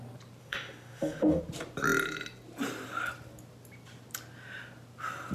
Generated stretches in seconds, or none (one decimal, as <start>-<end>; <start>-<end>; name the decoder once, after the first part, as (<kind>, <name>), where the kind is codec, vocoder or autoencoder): 0.4-1.4 (autoencoder, DAC-VAE)